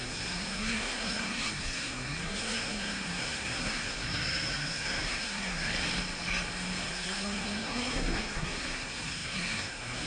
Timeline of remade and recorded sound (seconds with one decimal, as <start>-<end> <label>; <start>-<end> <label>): 0.0-5.7 remade; 5.7-6.9 recorded; 6.9-10.1 remade

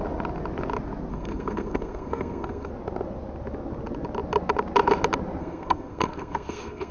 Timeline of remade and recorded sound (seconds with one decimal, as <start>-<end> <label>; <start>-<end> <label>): 0.0-1.1 recorded; 1.1-2.7 remade; 2.7-5.4 recorded; 5.4-6.9 remade

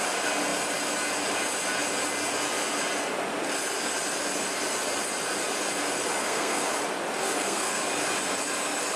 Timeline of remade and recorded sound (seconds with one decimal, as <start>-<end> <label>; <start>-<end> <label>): 0.0-6.2 recorded; 6.2-6.7 remade; 6.7-7.2 recorded; 7.2-7.8 remade; 7.8-9.0 recorded

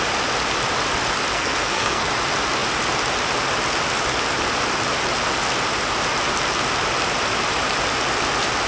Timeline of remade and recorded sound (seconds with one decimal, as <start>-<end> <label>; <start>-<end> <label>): 0.0-1.3 recorded; 1.3-2.1 remade; 2.1-8.7 recorded

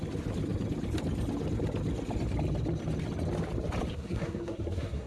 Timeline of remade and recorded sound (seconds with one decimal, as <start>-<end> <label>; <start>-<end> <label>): 0.0-3.9 recorded; 3.9-5.1 remade